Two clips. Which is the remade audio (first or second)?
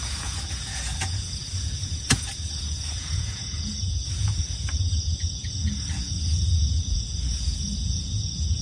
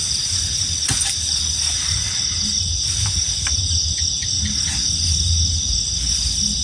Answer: first